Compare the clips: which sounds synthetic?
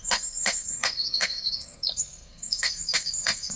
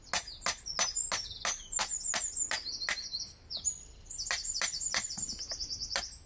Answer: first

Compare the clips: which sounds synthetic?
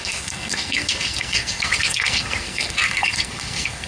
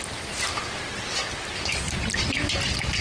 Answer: first